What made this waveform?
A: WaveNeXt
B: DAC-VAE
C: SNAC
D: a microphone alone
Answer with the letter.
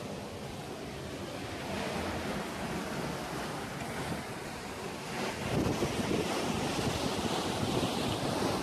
D